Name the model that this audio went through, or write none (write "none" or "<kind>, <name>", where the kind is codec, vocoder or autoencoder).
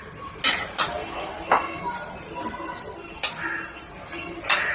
none